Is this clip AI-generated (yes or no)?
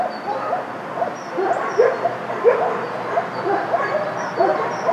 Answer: yes